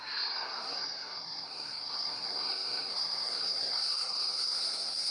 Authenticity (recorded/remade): remade